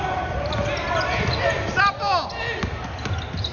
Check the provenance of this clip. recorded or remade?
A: recorded